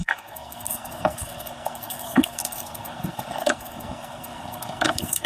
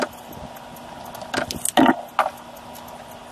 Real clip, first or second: second